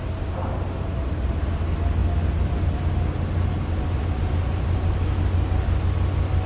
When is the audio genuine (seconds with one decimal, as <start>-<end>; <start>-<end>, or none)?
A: 0.0-6.5